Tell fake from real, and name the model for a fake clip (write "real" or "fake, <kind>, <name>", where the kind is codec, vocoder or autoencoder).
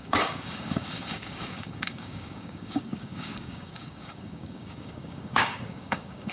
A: fake, codec, DAC